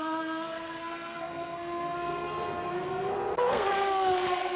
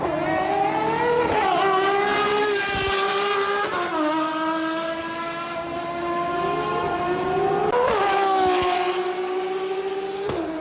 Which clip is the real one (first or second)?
second